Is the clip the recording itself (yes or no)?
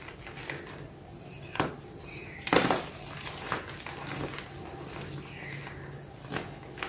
yes